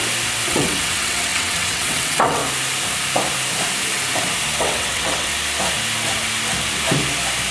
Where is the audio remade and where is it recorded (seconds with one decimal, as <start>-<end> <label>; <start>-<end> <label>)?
0.0-0.5 recorded; 0.5-2.4 remade; 2.4-4.6 recorded; 4.6-5.3 remade; 5.3-7.5 recorded